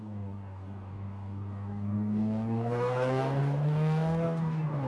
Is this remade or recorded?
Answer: remade